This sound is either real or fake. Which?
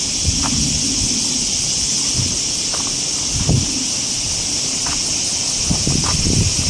real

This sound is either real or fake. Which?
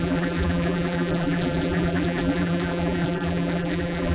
fake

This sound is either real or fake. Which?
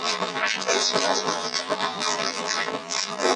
fake